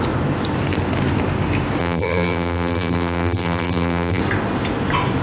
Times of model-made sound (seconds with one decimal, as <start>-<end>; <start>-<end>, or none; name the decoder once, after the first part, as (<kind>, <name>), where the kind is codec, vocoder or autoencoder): 1.8-4.2 (vocoder, BigVGAN v2)